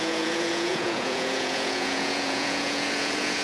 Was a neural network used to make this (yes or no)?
yes